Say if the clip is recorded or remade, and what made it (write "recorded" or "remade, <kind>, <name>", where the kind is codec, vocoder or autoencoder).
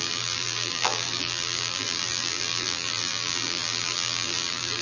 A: remade, vocoder, BigVGAN v2